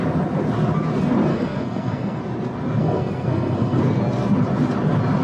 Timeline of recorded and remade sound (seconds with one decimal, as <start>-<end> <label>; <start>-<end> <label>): 0.0-1.3 recorded; 1.3-2.2 remade; 2.2-2.8 recorded; 2.8-3.8 remade; 3.8-5.2 recorded